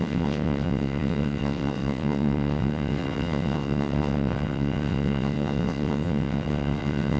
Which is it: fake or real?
fake